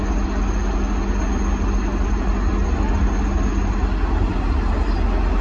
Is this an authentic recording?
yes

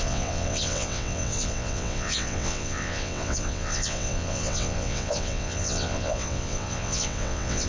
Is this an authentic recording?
no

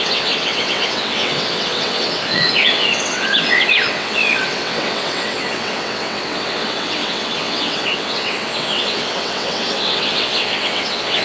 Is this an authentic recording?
no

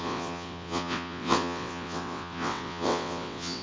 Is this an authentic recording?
no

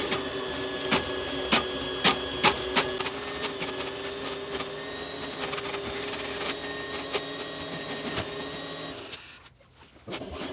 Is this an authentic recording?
yes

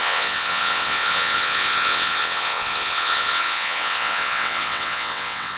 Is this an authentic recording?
no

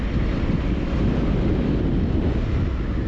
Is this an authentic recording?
yes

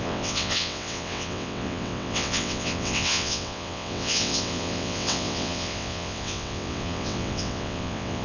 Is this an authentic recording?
no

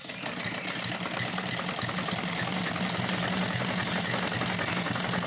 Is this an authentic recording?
yes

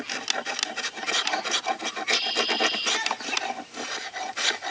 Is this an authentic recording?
yes